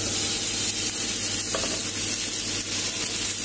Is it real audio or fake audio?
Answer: real